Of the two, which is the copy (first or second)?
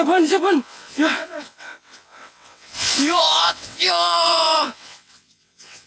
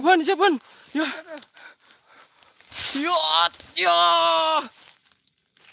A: first